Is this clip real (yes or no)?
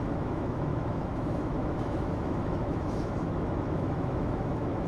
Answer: no